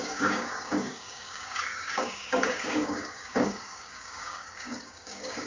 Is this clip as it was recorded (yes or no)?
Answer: no